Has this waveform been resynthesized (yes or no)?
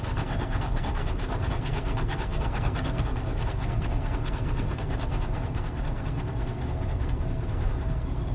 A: yes